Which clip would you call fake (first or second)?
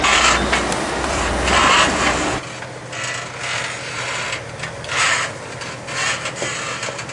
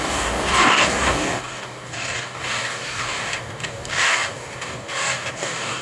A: second